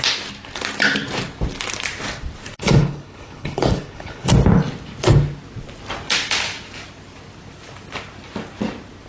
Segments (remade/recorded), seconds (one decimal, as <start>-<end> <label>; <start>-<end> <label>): 0.0-2.5 recorded; 2.5-4.3 remade; 4.3-9.1 recorded